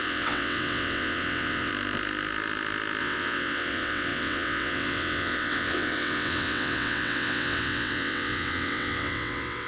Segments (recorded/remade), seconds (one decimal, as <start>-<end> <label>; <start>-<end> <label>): 0.0-1.7 remade; 1.7-3.0 recorded; 3.0-9.7 remade